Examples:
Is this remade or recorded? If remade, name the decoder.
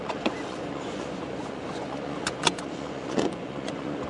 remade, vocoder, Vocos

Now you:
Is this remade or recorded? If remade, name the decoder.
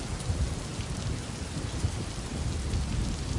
recorded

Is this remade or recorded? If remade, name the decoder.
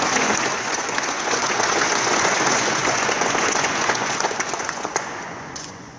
remade, vocoder, Vocos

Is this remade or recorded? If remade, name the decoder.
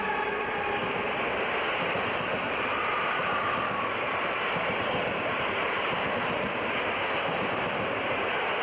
recorded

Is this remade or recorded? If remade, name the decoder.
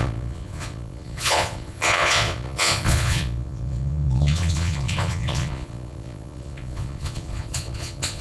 remade, vocoder, Vocos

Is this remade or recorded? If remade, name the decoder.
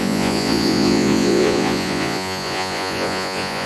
remade, vocoder, Vocos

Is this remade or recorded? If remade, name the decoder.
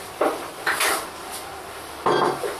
recorded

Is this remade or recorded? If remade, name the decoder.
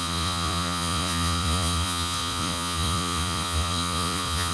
remade, vocoder, Vocos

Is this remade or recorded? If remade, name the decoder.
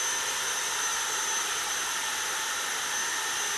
recorded